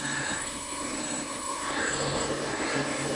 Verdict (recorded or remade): remade